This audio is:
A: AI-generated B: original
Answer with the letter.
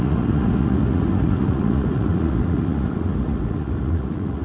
A